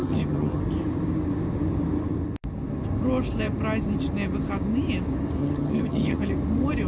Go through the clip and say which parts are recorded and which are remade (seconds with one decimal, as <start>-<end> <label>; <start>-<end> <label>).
0.0-0.6 remade; 0.6-5.4 recorded; 5.4-6.2 remade; 6.2-6.9 recorded